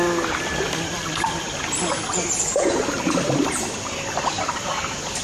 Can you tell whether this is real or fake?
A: real